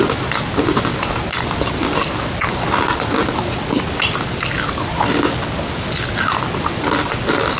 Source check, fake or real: real